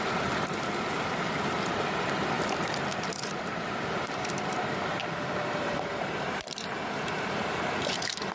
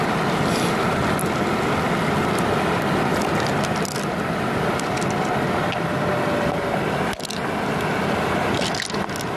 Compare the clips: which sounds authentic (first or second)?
second